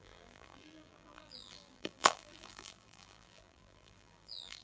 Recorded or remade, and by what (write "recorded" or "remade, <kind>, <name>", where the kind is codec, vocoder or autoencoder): remade, vocoder, BigVGAN v2